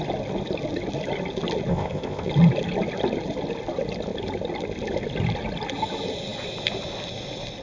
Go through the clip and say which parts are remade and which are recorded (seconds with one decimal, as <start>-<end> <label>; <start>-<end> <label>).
0.0-1.7 recorded; 1.7-2.3 remade; 2.3-7.6 recorded